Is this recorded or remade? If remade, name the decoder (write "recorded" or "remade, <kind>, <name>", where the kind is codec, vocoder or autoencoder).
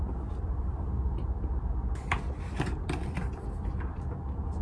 recorded